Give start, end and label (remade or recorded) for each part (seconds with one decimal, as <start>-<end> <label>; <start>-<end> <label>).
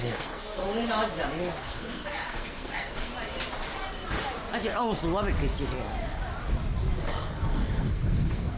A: 0.0-0.6 remade; 0.6-1.6 recorded; 1.6-3.1 remade; 3.1-7.1 recorded; 7.1-8.6 remade